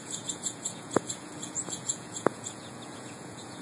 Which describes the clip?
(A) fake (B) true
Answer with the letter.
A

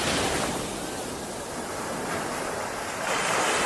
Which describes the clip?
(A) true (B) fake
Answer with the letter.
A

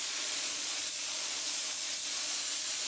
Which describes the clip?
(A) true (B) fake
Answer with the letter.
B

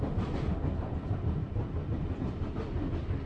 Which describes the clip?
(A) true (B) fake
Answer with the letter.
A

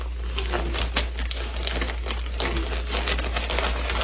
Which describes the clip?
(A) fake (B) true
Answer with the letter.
B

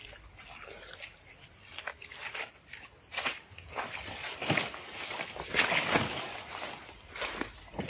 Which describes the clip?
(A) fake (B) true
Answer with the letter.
B